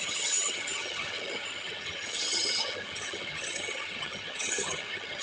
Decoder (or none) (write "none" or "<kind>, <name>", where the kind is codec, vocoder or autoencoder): vocoder, HiFi-GAN